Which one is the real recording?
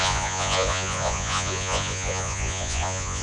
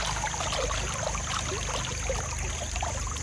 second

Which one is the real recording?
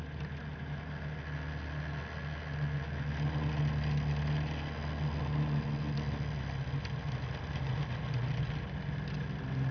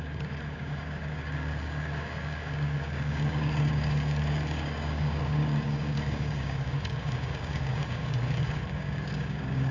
first